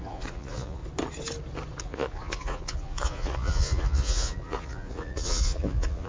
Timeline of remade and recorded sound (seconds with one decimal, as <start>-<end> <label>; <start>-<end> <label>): 0.0-0.8 remade; 0.8-1.8 recorded; 1.8-6.1 remade